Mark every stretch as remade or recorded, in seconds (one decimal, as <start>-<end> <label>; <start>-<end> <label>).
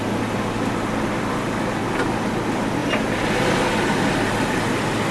0.0-5.1 recorded